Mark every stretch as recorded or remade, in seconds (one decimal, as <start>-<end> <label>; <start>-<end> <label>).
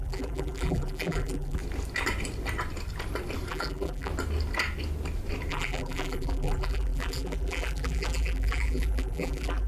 0.0-1.6 remade; 1.6-3.5 recorded; 3.5-4.1 remade; 4.1-5.5 recorded; 5.5-9.7 remade